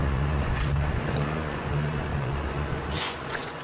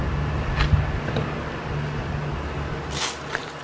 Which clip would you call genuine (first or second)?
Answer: second